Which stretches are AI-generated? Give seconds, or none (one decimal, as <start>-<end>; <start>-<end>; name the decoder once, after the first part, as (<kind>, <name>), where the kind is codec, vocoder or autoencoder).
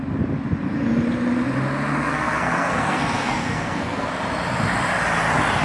1.9-4.1 (codec, SNAC)